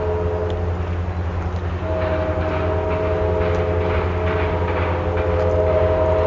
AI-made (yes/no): no